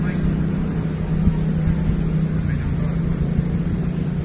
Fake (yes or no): no